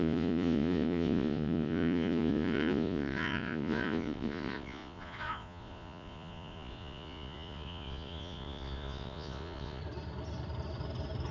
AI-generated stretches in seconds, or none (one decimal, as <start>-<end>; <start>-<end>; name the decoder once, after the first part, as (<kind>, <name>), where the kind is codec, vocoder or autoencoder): 0.0-9.8 (vocoder, Vocos)